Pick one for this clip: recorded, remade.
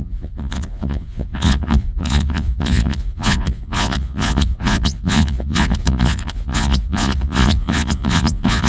remade